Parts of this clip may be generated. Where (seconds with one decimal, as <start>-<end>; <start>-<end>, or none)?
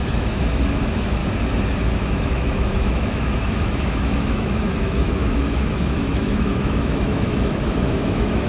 0.0-1.2; 1.9-8.5